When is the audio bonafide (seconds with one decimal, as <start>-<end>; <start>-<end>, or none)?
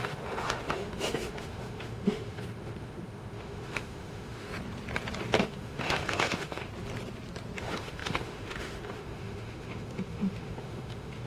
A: 4.5-5.4; 6.7-7.6